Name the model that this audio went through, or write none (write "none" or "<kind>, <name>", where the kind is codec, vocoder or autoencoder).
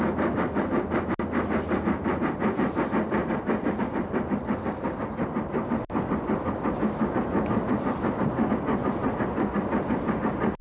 none